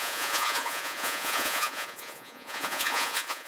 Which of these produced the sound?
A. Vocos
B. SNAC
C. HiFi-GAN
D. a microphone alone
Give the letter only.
A